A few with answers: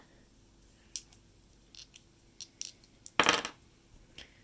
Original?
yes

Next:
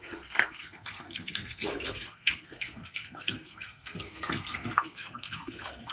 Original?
no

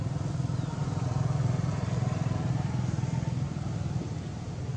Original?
yes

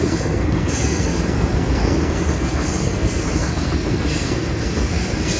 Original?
no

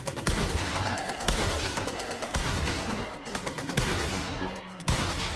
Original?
no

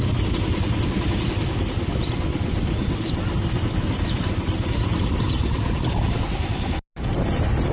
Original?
yes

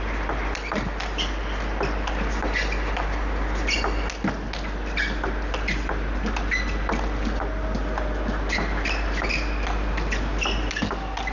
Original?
yes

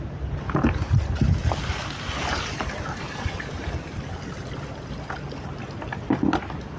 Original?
yes